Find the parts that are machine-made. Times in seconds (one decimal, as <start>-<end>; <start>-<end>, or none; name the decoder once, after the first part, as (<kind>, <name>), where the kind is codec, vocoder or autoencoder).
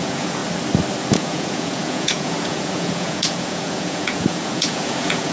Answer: 0.0-0.4 (vocoder, Vocos); 1.1-5.3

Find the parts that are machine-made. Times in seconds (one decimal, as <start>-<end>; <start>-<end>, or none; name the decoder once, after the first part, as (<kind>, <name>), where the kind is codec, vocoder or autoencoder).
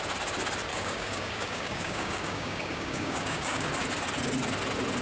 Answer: 0.7-3.7 (codec, DAC)